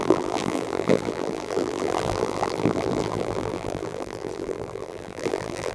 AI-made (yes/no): yes